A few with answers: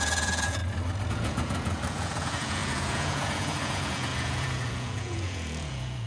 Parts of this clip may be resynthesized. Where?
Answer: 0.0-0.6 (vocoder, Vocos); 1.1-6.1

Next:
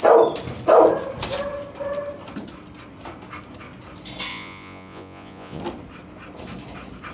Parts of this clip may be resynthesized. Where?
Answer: 4.3-5.6 (vocoder, Vocos)